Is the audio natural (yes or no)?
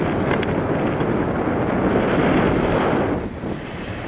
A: yes